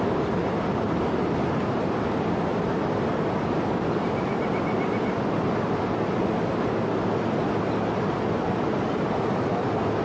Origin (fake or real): real